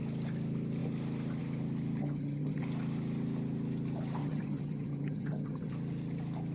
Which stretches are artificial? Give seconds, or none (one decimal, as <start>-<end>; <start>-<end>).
2.0-2.6; 4.2-5.7